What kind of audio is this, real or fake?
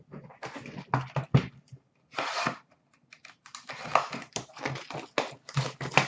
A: real